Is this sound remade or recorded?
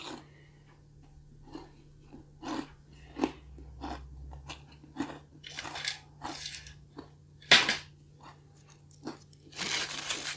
recorded